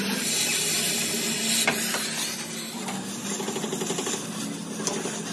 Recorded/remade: recorded